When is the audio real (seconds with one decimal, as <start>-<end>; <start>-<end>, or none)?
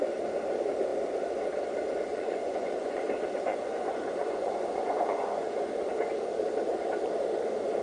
0.0-2.1; 3.0-3.5; 5.7-7.8